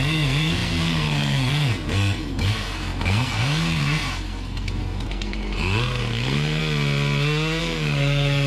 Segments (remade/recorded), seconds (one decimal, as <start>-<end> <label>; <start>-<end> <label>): 0.0-6.6 remade; 6.6-7.6 recorded; 7.6-8.5 remade